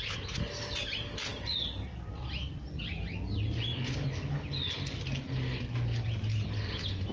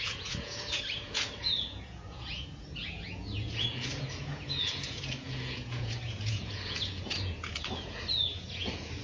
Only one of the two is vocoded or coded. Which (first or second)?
second